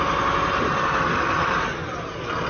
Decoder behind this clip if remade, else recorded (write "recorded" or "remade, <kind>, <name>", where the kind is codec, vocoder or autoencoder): recorded